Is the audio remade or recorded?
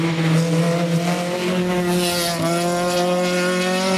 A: recorded